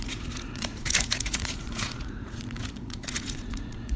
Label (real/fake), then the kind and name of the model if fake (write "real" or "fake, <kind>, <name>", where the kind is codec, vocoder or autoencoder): fake, vocoder, Vocos